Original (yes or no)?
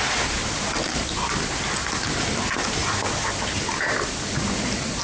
yes